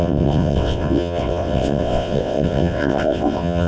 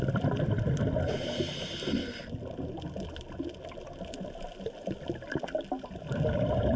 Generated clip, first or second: first